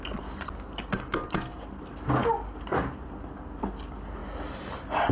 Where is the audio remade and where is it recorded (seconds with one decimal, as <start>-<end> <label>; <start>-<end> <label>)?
0.0-5.1 recorded